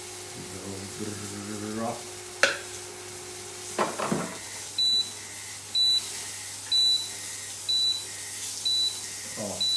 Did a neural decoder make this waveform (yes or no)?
no